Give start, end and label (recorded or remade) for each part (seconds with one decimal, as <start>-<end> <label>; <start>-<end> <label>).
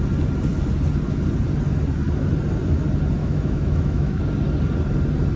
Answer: 0.0-3.2 recorded; 3.2-4.2 remade; 4.2-5.4 recorded